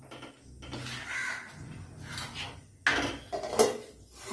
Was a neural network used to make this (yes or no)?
no